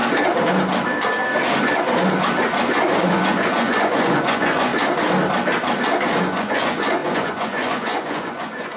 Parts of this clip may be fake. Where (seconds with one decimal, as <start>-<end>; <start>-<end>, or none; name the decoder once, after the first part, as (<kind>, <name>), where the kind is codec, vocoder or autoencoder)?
2.9-4.7 (vocoder, Vocos); 6.2-8.8